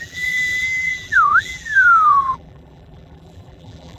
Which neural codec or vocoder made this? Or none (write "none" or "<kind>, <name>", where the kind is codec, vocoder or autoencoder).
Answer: vocoder, BigVGAN v2